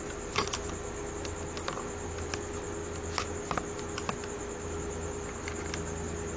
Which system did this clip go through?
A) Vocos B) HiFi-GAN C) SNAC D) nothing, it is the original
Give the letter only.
D